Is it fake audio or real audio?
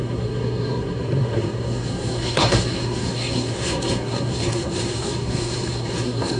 fake